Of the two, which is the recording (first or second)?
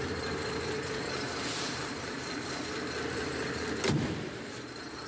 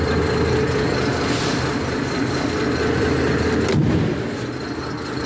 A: second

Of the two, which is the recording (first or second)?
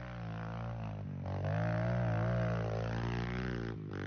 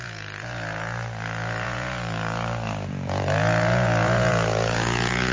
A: first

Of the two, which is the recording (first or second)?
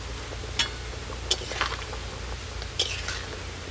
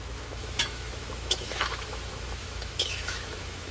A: first